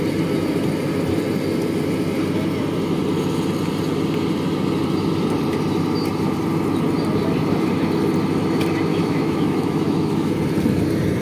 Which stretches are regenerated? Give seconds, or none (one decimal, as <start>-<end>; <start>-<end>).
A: 8.9-10.3